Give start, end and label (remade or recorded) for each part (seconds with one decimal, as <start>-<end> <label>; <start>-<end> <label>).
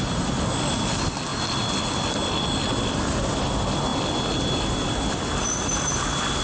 0.0-6.4 recorded